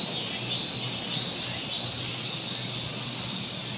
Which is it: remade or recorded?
recorded